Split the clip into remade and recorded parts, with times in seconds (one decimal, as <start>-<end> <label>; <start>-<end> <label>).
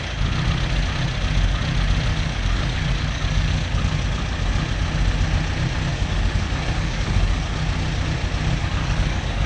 0.0-2.1 recorded; 2.1-3.5 remade; 3.5-5.9 recorded; 5.9-7.4 remade; 7.4-8.6 recorded; 8.6-9.5 remade